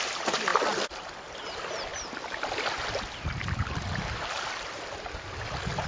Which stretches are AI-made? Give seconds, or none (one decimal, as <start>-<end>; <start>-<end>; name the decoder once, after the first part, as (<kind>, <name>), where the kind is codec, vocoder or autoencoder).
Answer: none

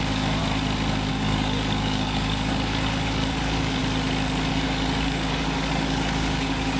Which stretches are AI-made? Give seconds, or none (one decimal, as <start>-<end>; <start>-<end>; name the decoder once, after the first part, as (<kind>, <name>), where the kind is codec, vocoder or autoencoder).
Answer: 0.0-0.4 (codec, DAC); 1.1-3.8; 4.5-6.8

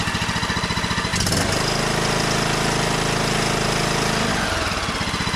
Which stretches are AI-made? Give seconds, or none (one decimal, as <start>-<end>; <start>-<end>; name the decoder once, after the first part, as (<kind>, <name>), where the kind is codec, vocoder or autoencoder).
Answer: none

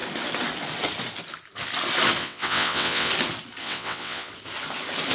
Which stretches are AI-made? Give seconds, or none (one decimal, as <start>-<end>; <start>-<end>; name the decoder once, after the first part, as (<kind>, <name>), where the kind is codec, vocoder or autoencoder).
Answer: 2.2-3.1 (vocoder, WaveNeXt); 3.6-4.3

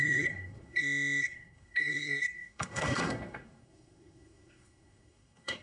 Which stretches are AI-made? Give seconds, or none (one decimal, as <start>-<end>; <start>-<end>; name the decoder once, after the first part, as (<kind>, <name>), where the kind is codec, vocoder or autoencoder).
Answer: 0.0-5.6 (codec, SNAC)

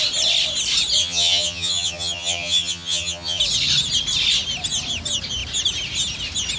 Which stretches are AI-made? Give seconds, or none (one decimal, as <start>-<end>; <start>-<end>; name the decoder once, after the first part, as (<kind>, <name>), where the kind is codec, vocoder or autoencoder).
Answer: 1.0-3.4 (vocoder, HiFi-GAN)